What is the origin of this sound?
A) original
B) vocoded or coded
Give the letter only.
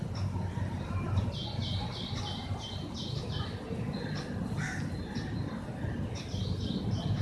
A